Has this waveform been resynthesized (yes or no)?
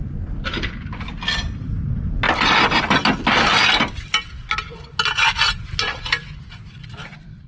no